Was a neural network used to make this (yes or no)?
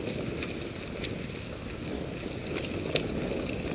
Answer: no